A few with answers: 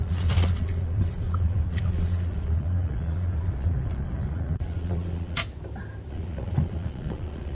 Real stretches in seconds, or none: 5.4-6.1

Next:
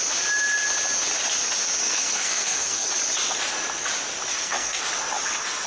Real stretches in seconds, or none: 0.0-1.8; 2.9-4.3; 4.8-5.7

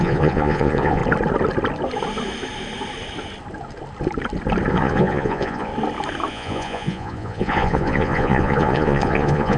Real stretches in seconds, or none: 1.0-4.7; 5.7-6.3

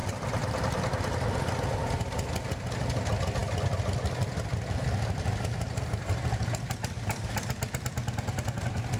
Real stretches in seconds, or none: 0.0-9.0

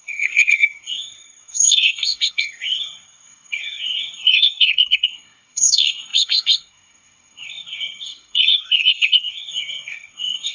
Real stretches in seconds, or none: none